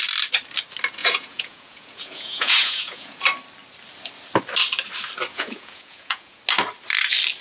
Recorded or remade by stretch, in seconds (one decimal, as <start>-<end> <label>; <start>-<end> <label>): 0.0-1.0 recorded; 1.0-3.2 remade; 3.2-5.3 recorded; 5.3-6.4 remade; 6.4-7.4 recorded